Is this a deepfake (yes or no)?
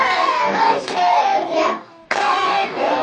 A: yes